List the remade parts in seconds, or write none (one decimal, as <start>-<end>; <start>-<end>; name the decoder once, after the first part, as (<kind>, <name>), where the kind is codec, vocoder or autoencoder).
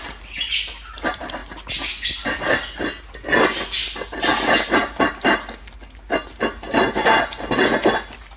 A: none